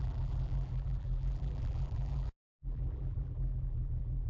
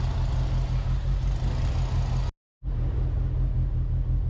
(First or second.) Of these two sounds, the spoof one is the first